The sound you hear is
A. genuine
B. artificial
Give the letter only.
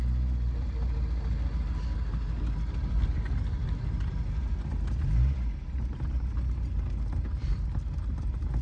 A